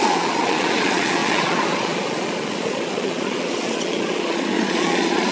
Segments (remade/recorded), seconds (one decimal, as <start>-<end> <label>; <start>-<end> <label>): 0.0-5.3 remade